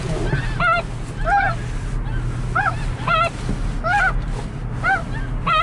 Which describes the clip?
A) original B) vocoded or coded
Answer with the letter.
A